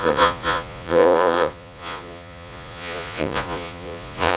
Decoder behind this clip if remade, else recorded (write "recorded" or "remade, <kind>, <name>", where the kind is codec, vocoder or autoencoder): remade, vocoder, Vocos